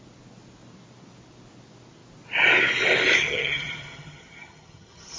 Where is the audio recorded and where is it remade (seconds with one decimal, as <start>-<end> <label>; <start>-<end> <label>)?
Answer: 0.0-3.2 recorded; 3.2-5.2 remade